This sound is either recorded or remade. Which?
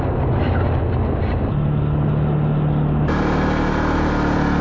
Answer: recorded